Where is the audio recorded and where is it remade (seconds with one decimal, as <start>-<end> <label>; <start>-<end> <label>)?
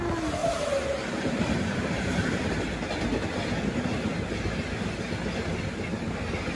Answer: 0.0-0.4 recorded; 0.4-2.5 remade; 2.5-6.5 recorded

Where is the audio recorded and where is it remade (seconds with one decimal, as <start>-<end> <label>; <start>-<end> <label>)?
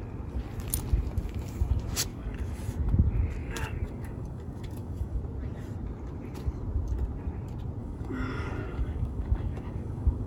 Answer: 0.0-2.1 recorded; 2.1-2.6 remade; 2.6-3.4 recorded; 3.4-5.2 remade; 5.2-7.8 recorded; 7.8-10.3 remade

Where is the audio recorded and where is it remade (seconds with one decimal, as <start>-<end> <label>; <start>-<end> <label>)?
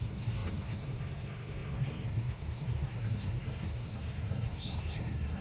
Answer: 0.0-5.4 remade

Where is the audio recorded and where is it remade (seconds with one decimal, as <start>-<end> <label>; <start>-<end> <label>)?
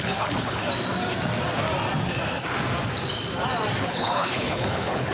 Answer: 0.0-0.7 remade; 0.7-3.8 recorded; 3.8-5.1 remade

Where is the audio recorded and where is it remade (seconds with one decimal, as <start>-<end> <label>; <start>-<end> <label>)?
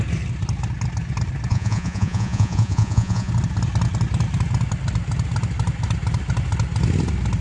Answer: 0.0-1.5 recorded; 1.5-3.3 remade; 3.3-7.4 recorded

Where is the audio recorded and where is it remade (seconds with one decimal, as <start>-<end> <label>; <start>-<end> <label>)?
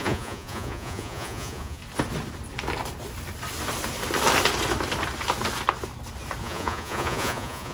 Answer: 0.0-1.8 remade; 1.8-6.4 recorded; 6.4-7.7 remade